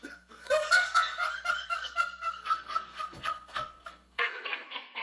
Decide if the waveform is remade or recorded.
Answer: remade